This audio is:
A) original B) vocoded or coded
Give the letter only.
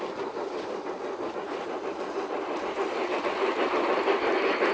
A